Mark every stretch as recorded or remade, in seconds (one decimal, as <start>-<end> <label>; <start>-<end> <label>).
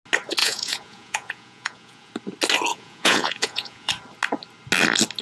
0.0-0.4 recorded; 0.4-2.1 remade; 2.1-2.7 recorded; 2.7-3.9 remade; 3.9-5.2 recorded